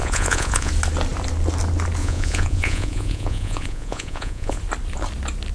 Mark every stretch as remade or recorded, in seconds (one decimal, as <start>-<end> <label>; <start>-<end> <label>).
0.0-0.7 remade; 0.7-2.0 recorded; 2.0-4.6 remade; 4.6-5.5 recorded